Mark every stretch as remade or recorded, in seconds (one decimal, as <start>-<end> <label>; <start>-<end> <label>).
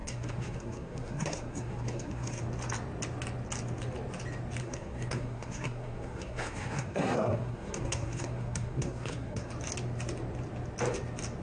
0.0-2.4 remade; 2.4-4.6 recorded; 4.6-9.5 remade; 9.5-11.4 recorded